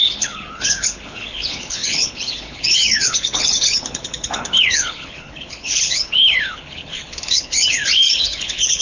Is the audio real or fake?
fake